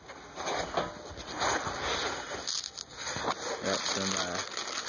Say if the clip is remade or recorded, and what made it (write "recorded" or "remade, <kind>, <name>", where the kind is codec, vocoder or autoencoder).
recorded